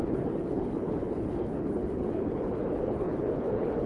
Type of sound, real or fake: fake